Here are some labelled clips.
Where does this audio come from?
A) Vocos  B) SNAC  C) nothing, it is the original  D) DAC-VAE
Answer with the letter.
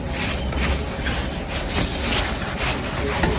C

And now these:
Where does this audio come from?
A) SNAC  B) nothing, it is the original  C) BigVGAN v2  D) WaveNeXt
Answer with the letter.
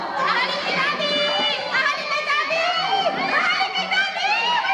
B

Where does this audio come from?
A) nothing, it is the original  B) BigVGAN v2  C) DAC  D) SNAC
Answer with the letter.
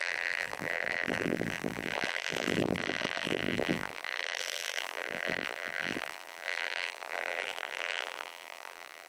B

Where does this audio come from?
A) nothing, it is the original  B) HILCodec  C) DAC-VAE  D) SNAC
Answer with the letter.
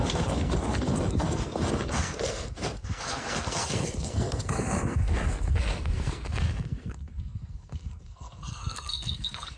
D